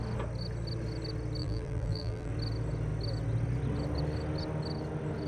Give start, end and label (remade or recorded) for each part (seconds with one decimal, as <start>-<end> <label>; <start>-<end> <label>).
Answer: 0.0-1.4 recorded; 1.4-2.3 remade; 2.3-5.3 recorded